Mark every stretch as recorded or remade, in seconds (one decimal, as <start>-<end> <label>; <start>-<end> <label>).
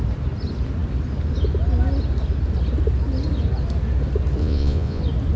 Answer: 0.0-4.4 recorded; 4.4-5.0 remade; 5.0-5.4 recorded